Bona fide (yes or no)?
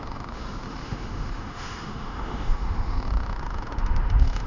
no